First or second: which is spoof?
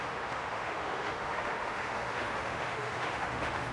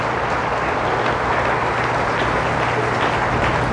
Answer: first